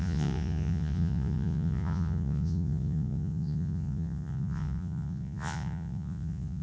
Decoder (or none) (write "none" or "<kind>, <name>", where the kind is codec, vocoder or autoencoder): vocoder, Vocos